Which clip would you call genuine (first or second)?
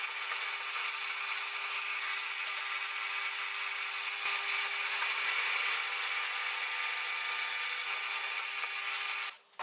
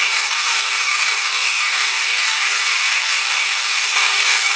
first